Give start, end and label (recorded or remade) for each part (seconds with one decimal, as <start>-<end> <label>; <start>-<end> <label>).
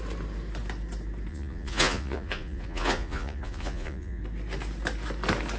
0.0-1.3 recorded; 1.3-4.2 remade; 4.2-5.6 recorded